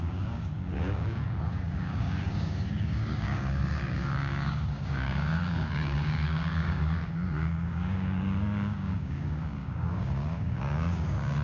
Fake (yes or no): yes